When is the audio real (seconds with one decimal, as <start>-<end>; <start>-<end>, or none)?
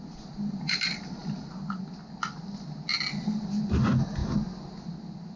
0.0-5.4